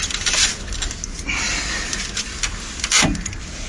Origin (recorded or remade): recorded